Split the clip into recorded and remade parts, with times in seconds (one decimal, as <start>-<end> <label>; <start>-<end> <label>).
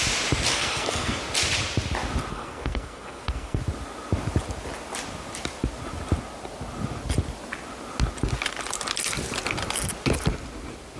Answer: 0.0-0.5 recorded; 0.5-1.2 remade; 1.2-2.3 recorded; 2.3-3.6 remade; 3.6-11.0 recorded